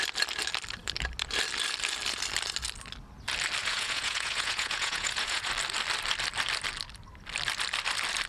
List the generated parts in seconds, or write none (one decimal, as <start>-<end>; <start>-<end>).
3.6-5.5